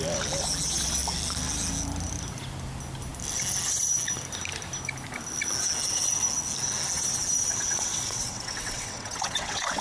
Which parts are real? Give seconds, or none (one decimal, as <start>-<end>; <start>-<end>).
0.0-7.5